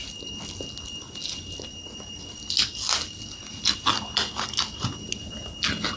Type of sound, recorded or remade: recorded